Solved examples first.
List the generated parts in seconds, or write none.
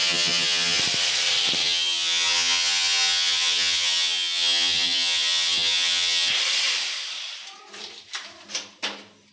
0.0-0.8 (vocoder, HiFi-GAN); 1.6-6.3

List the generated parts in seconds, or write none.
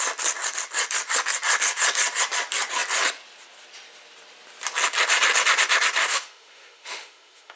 6.0-7.6 (autoencoder, DAC-VAE)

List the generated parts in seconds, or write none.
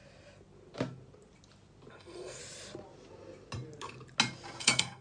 1.9-2.4 (codec, SNAC); 4.6-5.0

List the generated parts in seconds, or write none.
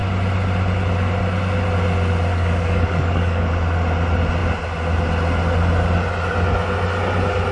2.3-3.5 (codec, DAC)